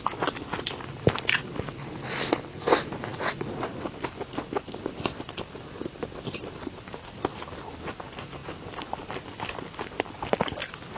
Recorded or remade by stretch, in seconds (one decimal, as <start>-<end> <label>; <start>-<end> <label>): 0.0-11.0 recorded